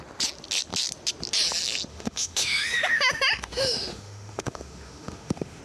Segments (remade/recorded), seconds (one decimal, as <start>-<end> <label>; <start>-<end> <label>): 0.0-1.9 recorded; 1.9-5.6 remade